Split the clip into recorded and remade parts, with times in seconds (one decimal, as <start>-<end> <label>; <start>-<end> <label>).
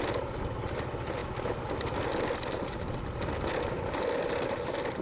0.0-5.0 recorded